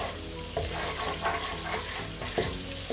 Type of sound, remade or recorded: recorded